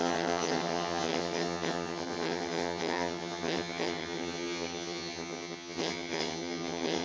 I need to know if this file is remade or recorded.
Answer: remade